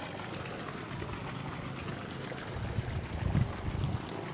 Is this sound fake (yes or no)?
no